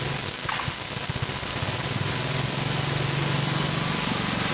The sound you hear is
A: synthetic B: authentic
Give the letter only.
A